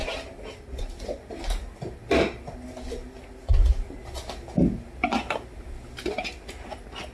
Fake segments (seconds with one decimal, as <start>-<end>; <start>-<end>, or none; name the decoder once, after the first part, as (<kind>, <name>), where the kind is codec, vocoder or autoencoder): none

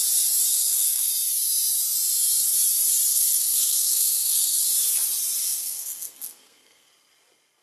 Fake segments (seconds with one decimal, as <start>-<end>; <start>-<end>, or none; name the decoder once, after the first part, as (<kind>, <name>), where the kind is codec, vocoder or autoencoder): 0.5-1.1 (codec, SNAC); 3.1-4.6; 5.4-6.9

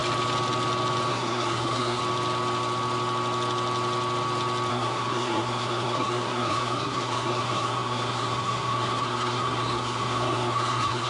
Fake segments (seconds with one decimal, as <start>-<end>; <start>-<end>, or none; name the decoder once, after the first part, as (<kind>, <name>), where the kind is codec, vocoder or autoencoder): 1.1-2.0 (codec, SNAC); 4.7-11.1

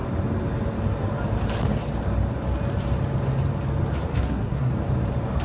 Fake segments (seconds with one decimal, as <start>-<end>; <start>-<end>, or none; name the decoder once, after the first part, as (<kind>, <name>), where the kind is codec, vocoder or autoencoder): 4.1-4.7 (codec, SNAC)

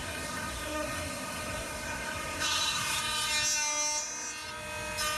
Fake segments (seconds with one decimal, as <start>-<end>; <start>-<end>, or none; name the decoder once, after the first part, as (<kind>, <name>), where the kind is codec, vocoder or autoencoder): 0.0-3.0 (codec, SNAC)

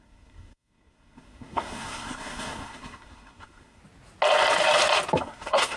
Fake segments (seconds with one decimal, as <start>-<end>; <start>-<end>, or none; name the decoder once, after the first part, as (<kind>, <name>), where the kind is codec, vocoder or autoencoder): 0.0-3.8 (codec, SNAC); 5.2-5.8